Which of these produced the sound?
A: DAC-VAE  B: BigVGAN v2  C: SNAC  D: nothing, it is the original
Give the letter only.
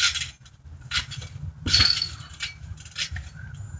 D